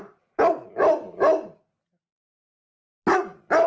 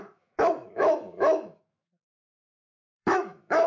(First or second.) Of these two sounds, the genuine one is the first